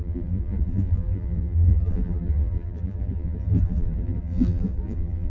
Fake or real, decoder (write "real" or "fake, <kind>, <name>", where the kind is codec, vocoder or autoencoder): fake, vocoder, BigVGAN v2